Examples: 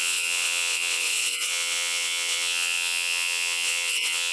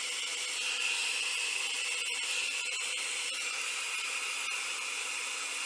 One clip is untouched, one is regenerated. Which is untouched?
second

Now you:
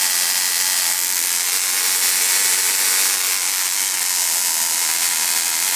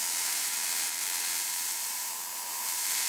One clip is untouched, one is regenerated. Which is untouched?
first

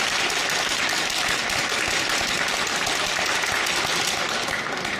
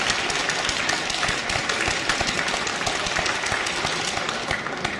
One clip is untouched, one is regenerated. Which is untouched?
second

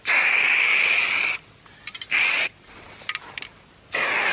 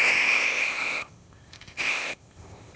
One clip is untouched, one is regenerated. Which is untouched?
first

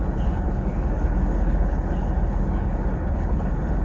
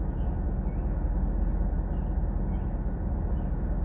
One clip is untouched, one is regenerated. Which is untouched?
second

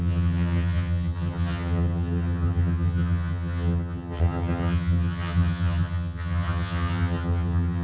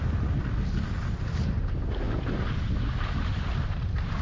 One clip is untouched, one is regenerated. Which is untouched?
second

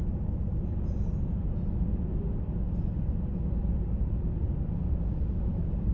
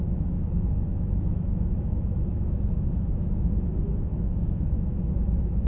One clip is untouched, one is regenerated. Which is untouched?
first